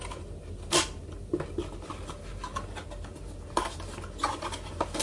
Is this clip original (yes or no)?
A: yes